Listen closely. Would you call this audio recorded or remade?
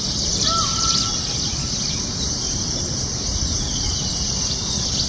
recorded